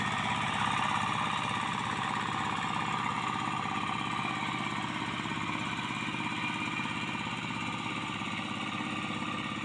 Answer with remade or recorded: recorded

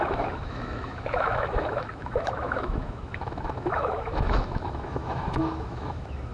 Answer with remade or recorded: remade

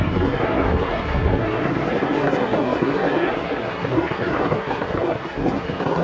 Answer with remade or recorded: remade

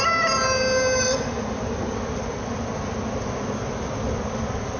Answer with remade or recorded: recorded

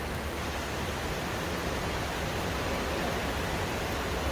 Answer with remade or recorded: recorded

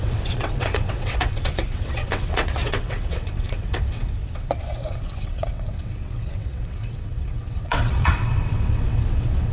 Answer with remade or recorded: remade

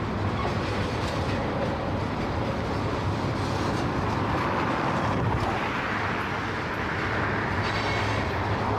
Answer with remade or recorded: recorded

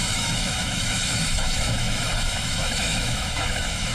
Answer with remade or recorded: remade